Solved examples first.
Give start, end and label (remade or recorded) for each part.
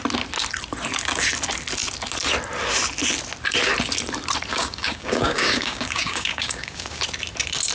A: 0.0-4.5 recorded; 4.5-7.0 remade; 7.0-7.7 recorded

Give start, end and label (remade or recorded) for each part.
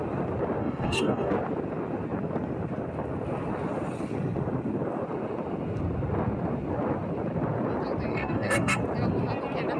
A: 0.0-0.6 recorded; 0.6-1.3 remade; 1.3-8.1 recorded; 8.1-8.8 remade; 8.8-9.8 recorded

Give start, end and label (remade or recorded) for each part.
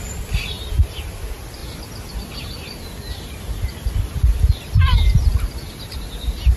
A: 0.0-6.6 recorded